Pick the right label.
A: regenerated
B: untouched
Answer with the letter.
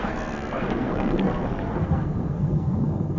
A